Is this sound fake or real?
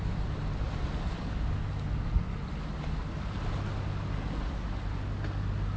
real